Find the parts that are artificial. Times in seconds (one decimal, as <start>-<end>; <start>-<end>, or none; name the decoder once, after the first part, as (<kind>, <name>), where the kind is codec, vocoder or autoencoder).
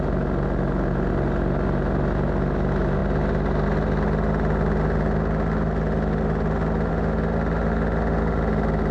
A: none